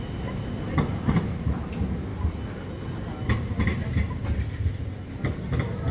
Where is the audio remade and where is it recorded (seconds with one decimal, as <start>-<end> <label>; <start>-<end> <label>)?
0.0-5.9 recorded